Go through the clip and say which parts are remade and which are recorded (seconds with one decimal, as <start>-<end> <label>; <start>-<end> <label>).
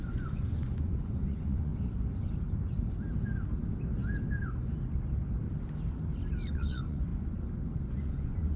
0.0-1.7 remade; 1.7-6.5 recorded; 6.5-7.1 remade; 7.1-7.9 recorded; 7.9-8.6 remade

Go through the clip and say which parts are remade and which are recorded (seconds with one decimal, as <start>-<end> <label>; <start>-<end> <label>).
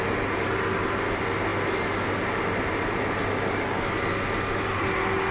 0.0-5.3 recorded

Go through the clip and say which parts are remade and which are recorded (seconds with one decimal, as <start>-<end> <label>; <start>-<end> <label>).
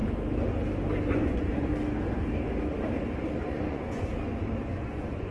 0.0-1.1 recorded; 1.1-1.7 remade; 1.7-3.5 recorded; 3.5-4.1 remade; 4.1-4.6 recorded; 4.6-5.3 remade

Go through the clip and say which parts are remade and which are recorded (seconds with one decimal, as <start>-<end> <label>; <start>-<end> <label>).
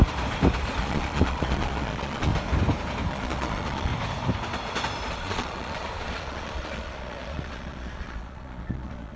0.0-0.8 recorded; 0.8-2.3 remade; 2.3-3.1 recorded; 3.1-3.9 remade; 3.9-5.1 recorded; 5.1-9.2 remade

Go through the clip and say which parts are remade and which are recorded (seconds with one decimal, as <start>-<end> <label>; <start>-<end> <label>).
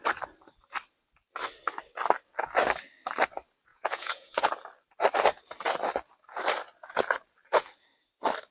0.0-3.7 recorded; 3.7-4.5 remade; 4.5-8.5 recorded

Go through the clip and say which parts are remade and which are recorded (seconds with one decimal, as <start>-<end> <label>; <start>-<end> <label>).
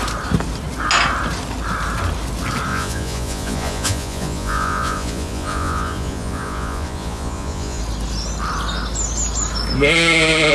0.0-2.7 recorded; 2.7-7.8 remade; 7.8-10.5 recorded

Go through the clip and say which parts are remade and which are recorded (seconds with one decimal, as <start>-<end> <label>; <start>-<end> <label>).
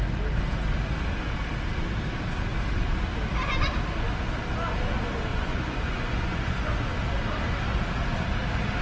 0.0-5.3 recorded; 5.3-7.0 remade; 7.0-8.8 recorded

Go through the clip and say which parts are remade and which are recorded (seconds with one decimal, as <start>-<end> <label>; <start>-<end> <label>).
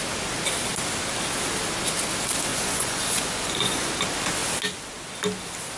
0.0-2.5 recorded; 2.5-3.9 remade; 3.9-5.8 recorded